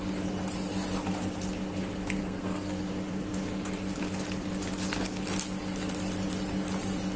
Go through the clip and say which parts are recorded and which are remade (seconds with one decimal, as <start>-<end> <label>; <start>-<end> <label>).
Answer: 0.0-2.2 recorded; 2.2-2.8 remade; 2.8-7.2 recorded